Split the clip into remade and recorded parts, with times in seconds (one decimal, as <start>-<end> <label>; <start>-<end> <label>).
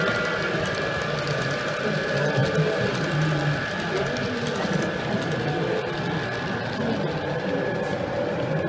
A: 0.0-8.7 recorded